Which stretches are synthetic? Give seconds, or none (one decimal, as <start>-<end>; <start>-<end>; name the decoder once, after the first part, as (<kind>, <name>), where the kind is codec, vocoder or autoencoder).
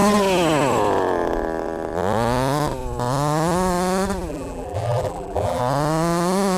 4.3-5.6 (vocoder, BigVGAN v2)